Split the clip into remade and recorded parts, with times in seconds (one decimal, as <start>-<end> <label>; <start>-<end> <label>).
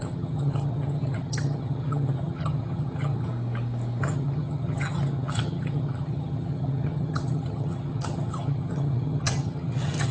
0.0-3.3 remade; 3.3-4.0 recorded; 4.0-10.1 remade